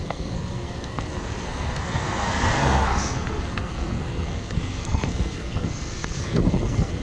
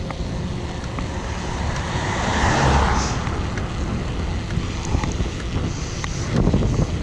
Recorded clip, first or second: second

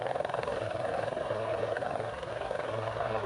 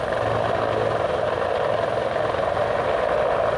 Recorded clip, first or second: second